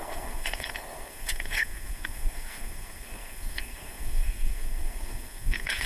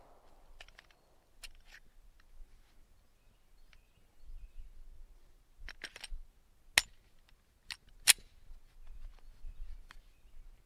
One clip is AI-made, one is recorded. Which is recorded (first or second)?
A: second